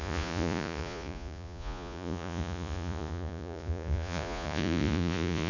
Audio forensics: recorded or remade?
remade